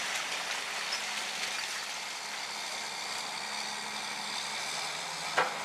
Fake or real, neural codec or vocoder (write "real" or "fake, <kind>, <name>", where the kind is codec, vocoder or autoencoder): real